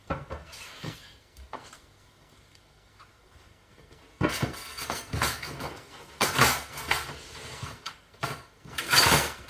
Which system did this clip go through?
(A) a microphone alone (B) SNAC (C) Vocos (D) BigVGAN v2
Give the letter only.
B